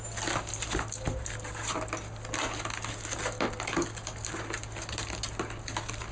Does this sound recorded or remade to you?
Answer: recorded